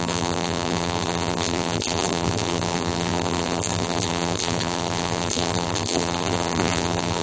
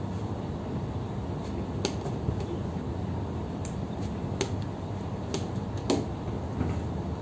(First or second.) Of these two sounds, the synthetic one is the first